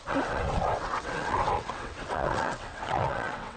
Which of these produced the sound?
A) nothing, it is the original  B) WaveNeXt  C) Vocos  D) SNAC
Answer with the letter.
B